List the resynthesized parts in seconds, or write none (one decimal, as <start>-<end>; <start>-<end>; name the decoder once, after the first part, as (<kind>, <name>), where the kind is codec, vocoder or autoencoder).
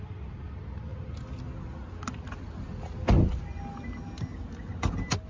none